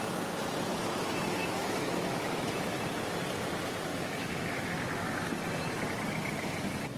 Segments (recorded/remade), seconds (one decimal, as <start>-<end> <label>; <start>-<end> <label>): 0.0-1.4 recorded; 1.4-2.8 remade; 2.8-3.9 recorded; 3.9-4.7 remade; 4.7-7.0 recorded